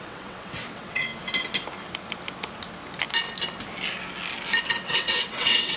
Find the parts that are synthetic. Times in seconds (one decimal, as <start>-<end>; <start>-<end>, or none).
0.0-1.1; 4.6-5.8